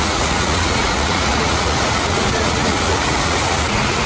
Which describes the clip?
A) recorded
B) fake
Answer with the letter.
B